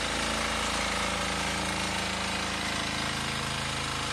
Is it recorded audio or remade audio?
recorded